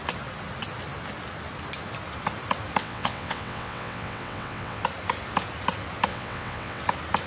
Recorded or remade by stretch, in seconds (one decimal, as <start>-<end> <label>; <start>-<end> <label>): 0.0-2.8 recorded; 2.8-4.8 remade; 4.8-6.1 recorded; 6.1-6.8 remade; 6.8-7.3 recorded